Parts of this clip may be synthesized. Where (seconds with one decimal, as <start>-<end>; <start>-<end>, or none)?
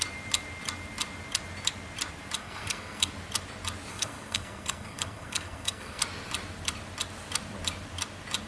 2.4-3.1; 3.9-6.0